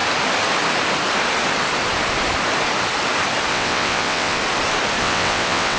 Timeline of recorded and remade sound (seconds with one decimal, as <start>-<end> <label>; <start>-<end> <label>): 0.0-3.5 recorded; 3.5-4.4 remade; 4.4-5.0 recorded; 5.0-5.8 remade